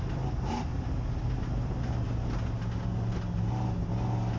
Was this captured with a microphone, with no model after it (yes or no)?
yes